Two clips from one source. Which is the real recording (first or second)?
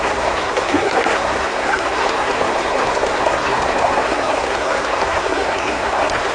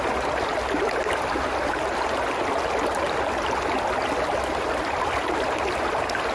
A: second